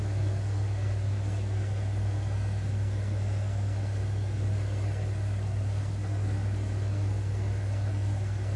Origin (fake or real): fake